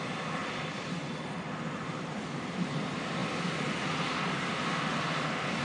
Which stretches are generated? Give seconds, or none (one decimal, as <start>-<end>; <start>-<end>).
none

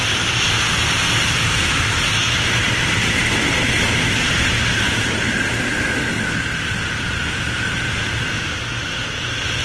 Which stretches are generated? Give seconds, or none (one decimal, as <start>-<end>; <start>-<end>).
0.0-1.7; 4.6-5.2

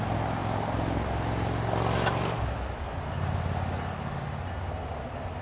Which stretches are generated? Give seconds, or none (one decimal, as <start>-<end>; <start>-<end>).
none

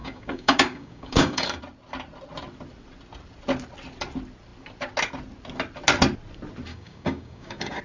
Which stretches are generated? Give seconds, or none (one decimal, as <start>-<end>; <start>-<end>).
0.0-1.6; 6.7-7.8

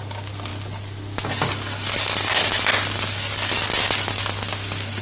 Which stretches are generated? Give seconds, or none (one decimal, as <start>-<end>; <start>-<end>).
none